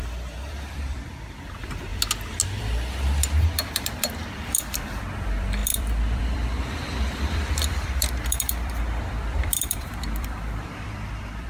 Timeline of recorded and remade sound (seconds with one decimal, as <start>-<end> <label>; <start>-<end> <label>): 0.0-1.9 remade; 1.9-2.6 recorded; 2.6-11.5 remade